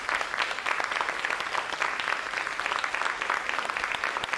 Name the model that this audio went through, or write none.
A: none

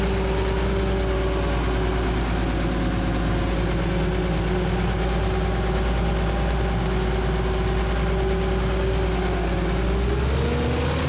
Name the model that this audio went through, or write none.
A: none